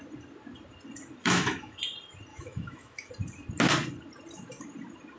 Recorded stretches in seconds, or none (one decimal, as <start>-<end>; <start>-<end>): 0.0-1.2; 1.8-2.3; 3.1-5.2